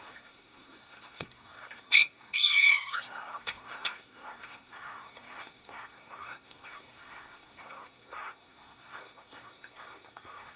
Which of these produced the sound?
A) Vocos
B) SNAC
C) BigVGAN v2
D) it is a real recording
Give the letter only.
B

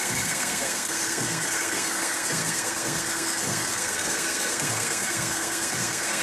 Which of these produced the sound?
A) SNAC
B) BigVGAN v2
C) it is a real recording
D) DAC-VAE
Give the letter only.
A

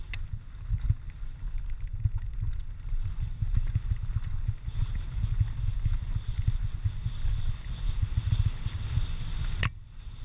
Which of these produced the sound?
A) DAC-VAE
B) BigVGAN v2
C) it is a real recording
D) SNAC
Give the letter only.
C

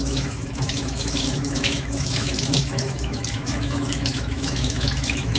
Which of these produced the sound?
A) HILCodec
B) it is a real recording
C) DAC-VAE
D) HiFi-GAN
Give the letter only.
C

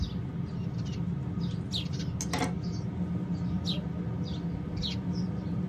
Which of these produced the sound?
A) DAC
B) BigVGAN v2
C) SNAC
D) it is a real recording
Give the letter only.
D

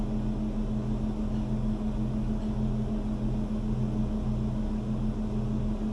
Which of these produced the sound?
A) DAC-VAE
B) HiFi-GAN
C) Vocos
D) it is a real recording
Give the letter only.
D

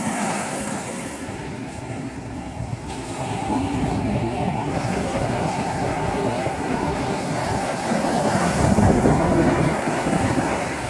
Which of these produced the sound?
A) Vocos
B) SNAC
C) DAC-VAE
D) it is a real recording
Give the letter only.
B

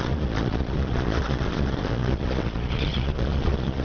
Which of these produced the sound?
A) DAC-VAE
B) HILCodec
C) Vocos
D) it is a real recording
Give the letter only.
C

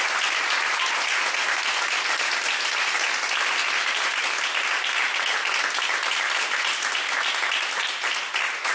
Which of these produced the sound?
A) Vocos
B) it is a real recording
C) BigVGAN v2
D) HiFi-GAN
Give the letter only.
B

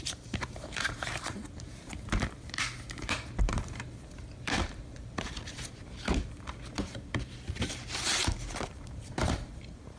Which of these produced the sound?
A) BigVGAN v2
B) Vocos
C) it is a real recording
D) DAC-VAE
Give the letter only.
A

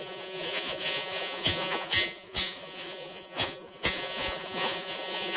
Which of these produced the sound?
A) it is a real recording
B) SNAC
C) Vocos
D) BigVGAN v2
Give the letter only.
C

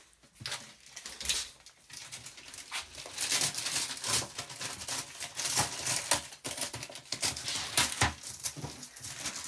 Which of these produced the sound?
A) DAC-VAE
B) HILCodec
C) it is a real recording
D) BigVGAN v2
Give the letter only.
C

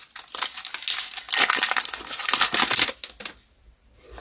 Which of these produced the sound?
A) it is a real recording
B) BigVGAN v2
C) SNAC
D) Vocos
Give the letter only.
A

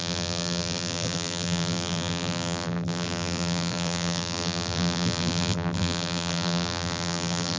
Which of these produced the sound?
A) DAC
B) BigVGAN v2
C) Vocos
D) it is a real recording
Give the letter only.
B